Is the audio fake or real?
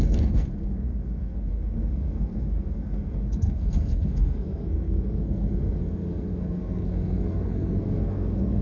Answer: fake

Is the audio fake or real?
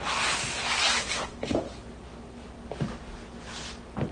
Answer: real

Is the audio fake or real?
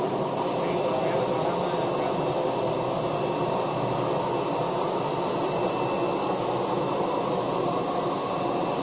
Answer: real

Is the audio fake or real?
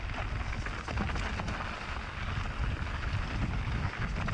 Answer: real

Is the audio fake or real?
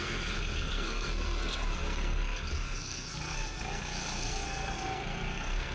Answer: fake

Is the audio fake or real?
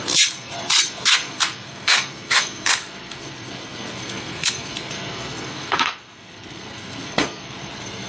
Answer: fake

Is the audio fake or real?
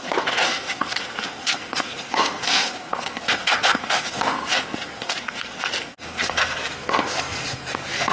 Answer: fake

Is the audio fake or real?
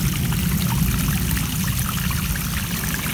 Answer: real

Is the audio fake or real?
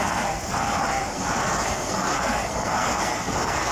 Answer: fake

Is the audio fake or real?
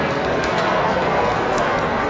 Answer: fake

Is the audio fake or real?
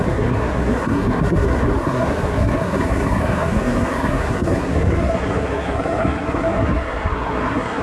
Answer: fake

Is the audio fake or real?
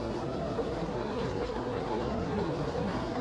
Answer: fake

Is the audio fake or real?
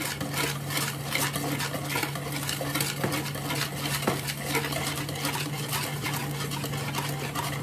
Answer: real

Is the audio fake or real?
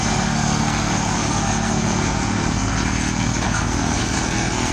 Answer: fake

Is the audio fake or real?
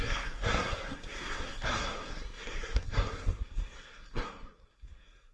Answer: fake